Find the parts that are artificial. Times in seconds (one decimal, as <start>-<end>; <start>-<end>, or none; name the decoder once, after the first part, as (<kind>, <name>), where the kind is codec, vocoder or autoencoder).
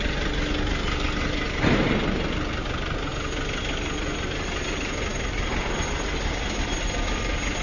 none